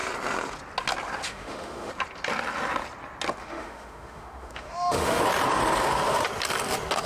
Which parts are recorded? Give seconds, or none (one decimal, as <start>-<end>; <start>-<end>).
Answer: 0.0-1.3; 1.9-3.4; 5.2-7.1